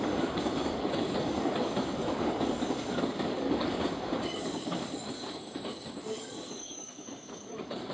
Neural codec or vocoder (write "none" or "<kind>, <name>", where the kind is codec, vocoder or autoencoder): codec, DAC